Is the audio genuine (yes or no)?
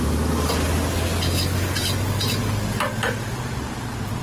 yes